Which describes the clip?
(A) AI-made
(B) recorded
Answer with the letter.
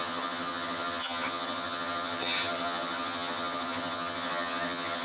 A